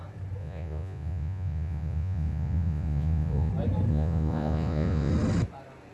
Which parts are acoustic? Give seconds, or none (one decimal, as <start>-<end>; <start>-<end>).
0.0-0.4; 3.5-3.9; 5.1-5.9